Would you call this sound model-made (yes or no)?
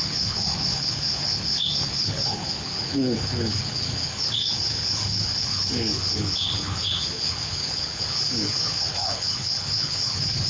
yes